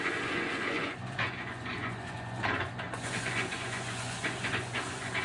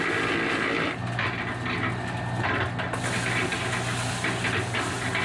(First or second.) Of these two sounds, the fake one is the first